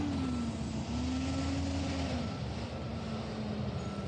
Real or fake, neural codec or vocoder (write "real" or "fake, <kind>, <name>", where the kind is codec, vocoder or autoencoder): real